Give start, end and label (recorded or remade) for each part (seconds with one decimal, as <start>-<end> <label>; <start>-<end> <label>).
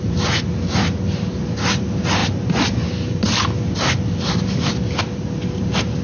0.0-6.0 recorded